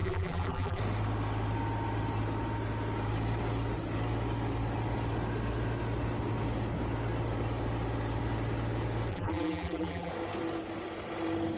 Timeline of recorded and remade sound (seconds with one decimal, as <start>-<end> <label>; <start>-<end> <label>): 0.0-0.8 remade; 0.8-9.1 recorded; 9.1-10.1 remade; 10.1-11.6 recorded